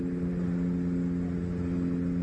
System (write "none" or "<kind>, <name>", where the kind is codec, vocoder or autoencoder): none